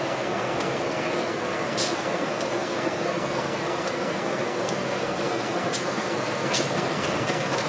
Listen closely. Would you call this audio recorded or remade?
remade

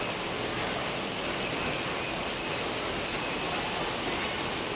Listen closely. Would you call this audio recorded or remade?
recorded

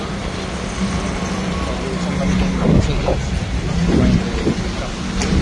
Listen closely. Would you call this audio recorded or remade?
recorded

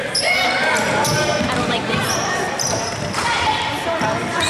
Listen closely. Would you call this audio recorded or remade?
remade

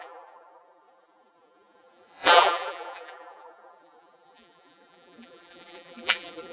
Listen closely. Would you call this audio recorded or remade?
remade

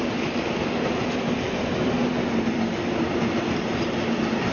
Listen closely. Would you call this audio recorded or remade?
recorded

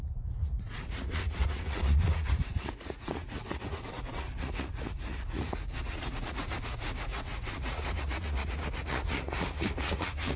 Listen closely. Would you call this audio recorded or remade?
remade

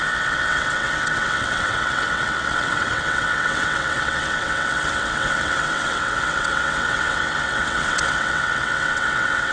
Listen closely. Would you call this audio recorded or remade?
remade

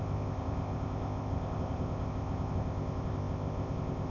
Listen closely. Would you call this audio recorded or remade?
remade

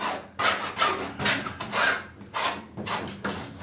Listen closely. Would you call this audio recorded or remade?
recorded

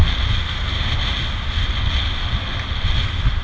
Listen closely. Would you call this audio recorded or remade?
recorded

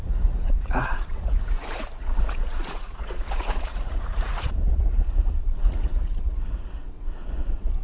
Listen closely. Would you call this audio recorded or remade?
remade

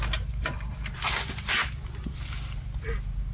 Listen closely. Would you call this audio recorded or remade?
recorded